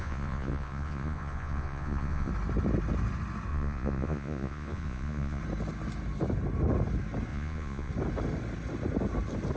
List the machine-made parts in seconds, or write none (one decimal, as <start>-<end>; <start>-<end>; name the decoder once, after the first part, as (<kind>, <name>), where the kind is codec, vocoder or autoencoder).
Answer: 0.0-2.3 (vocoder, Vocos); 3.5-5.4; 7.3-7.9